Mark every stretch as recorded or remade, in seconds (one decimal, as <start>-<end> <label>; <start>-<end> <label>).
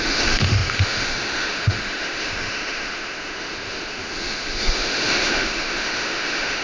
0.0-6.6 remade